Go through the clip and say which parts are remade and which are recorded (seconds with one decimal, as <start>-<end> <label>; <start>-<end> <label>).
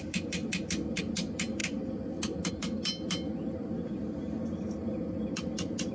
0.0-5.9 recorded